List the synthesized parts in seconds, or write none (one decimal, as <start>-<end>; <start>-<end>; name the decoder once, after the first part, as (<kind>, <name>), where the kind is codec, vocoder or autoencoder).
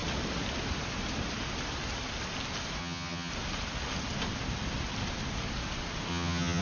2.8-3.3 (vocoder, HiFi-GAN); 6.1-6.6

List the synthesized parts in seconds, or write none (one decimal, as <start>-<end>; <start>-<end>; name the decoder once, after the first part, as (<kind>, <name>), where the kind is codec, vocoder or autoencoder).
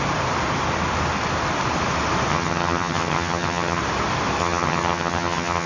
2.3-3.8 (vocoder, HiFi-GAN); 4.4-5.7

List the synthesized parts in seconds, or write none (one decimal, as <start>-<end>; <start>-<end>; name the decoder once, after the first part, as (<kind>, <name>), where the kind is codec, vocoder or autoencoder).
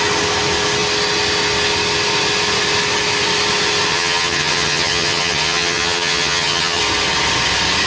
3.9-6.8 (vocoder, HiFi-GAN)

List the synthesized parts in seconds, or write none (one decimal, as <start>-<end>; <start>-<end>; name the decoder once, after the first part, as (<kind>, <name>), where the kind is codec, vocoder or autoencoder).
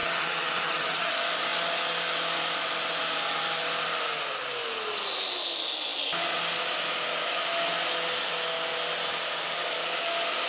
0.0-1.1 (vocoder, HiFi-GAN)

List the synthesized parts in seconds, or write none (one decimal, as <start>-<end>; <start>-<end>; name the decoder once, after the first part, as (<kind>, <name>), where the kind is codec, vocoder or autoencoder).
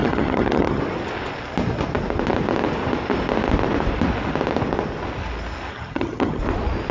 0.0-0.8 (vocoder, HiFi-GAN); 5.7-6.4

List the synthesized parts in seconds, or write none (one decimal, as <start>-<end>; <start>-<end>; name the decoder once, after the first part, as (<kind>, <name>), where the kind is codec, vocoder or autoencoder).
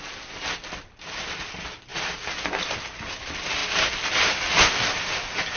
none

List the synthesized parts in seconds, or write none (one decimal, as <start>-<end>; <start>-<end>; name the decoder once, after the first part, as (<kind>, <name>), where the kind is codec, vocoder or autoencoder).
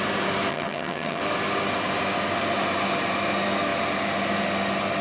0.5-1.2 (vocoder, HiFi-GAN)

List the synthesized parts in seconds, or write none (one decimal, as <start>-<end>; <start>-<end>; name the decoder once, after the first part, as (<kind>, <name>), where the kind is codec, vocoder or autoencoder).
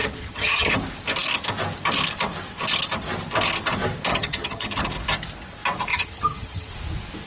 0.0-0.7 (vocoder, HiFi-GAN); 4.1-4.8; 5.9-6.7